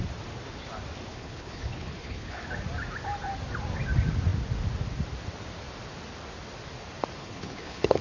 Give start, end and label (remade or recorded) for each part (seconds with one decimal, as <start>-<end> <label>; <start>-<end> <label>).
0.0-1.1 recorded; 1.1-2.5 remade; 2.5-7.2 recorded; 7.2-8.0 remade

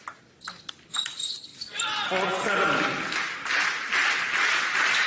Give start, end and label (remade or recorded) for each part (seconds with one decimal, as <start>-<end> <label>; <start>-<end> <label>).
0.0-5.1 recorded

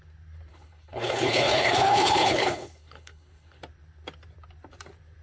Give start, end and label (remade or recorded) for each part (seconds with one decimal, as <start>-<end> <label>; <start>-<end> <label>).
0.0-0.5 recorded; 0.5-3.6 remade; 3.6-5.2 recorded

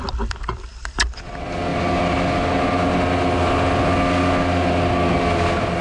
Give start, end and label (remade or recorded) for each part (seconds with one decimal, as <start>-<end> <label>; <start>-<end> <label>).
0.0-5.8 recorded

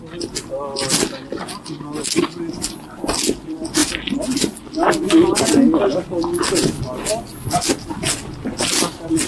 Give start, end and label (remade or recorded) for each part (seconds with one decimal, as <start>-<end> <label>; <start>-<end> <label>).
0.0-9.3 recorded

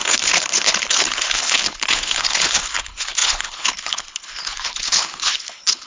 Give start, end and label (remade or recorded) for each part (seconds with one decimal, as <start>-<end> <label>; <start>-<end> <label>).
0.0-5.9 remade

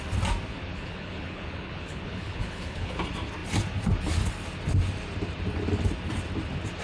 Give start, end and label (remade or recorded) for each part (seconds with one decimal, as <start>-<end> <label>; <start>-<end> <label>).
0.0-0.5 recorded; 0.5-3.0 remade; 3.0-6.8 recorded